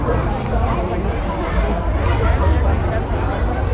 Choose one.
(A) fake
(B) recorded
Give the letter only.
A